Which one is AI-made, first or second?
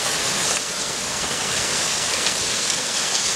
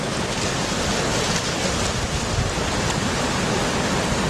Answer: first